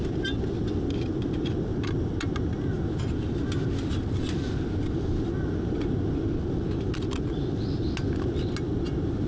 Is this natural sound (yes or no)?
yes